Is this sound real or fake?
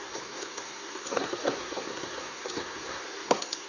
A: fake